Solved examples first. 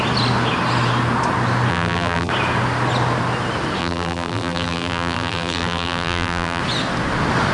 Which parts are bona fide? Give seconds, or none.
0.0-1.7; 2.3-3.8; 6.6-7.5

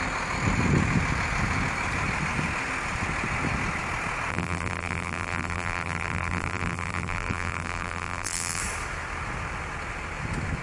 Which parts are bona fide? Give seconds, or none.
0.0-4.3; 8.6-10.6

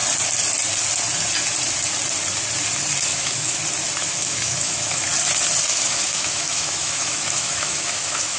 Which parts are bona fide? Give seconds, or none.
0.0-3.1; 3.6-4.0; 5.1-5.7

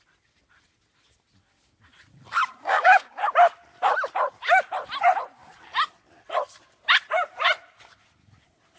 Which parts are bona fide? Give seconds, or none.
0.0-2.6; 3.2-8.8

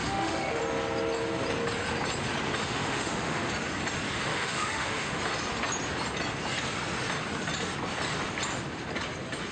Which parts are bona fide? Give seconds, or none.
0.6-2.6; 3.5-4.3; 5.2-9.5

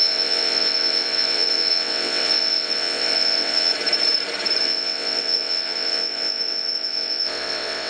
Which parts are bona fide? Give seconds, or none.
3.7-4.6

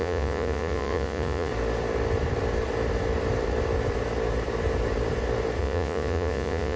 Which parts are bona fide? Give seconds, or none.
1.5-5.6

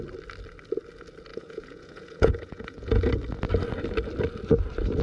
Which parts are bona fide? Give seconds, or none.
0.0-1.3; 3.1-5.0